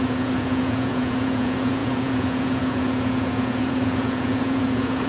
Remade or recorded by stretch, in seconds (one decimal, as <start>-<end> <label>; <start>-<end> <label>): 0.0-5.1 remade